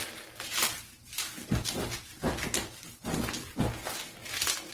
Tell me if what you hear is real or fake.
real